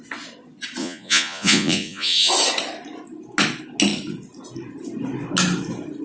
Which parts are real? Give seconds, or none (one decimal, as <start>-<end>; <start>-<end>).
0.0-0.8; 2.3-6.0